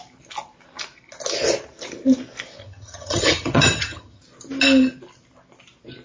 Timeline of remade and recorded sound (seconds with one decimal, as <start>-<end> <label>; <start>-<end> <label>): 0.0-2.6 recorded; 2.6-4.2 remade; 4.2-6.0 recorded